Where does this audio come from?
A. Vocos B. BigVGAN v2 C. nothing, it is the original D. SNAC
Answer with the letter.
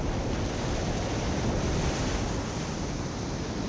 C